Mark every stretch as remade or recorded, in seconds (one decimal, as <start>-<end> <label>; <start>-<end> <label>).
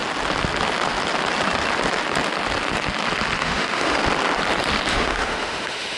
0.0-3.4 recorded; 3.4-4.0 remade; 4.0-4.9 recorded; 4.9-6.0 remade